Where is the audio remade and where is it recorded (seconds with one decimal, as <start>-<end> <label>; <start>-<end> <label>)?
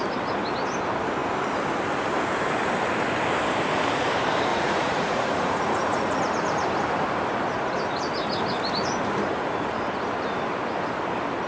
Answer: 0.0-4.5 recorded; 4.5-6.2 remade; 6.2-11.5 recorded